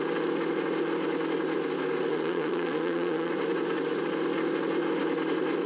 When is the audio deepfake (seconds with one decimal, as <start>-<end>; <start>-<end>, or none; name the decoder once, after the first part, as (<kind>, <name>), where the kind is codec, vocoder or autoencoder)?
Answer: 2.1-3.3 (vocoder, Vocos)